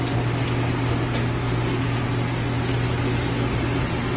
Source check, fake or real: real